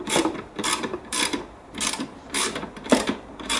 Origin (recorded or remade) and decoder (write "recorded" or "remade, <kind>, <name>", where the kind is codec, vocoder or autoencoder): remade, vocoder, BigVGAN v2